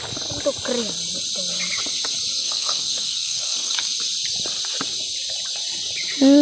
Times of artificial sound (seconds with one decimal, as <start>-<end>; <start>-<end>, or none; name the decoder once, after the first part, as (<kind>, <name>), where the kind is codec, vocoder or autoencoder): 2.4-3.9 (codec, SNAC)